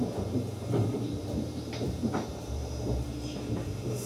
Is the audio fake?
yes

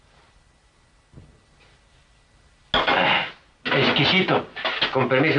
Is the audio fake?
no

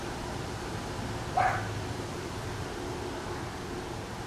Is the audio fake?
yes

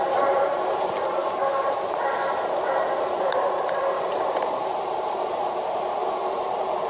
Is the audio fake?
yes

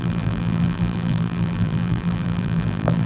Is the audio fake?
yes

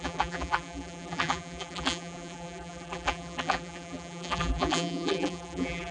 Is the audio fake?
yes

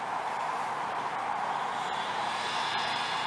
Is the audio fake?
yes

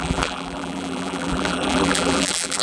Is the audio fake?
yes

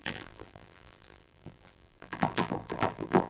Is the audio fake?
yes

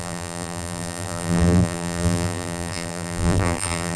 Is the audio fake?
yes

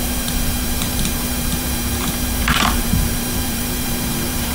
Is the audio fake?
yes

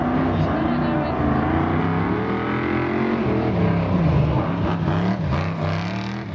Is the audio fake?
no